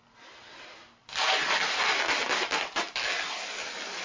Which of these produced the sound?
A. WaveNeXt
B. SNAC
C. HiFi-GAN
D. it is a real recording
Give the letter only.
D